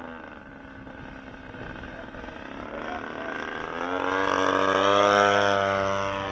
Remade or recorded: recorded